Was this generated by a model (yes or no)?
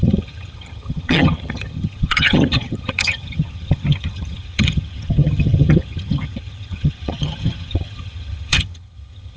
yes